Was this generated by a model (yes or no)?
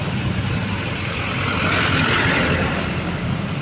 no